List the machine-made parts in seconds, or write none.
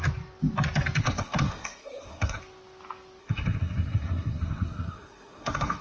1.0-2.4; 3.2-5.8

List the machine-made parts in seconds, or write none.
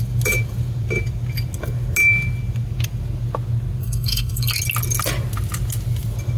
3.8-4.5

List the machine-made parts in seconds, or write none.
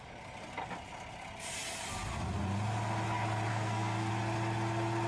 3.5-4.1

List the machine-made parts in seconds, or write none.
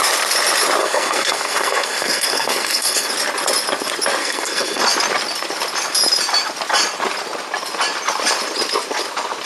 0.8-3.1; 4.2-4.8